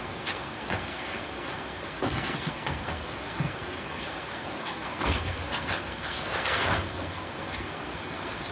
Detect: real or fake fake